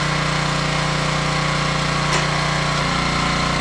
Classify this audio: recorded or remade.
recorded